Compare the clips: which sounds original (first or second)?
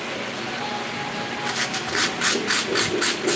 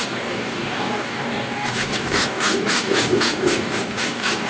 first